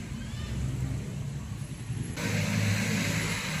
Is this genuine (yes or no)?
yes